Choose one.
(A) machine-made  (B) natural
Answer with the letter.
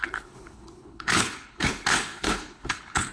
A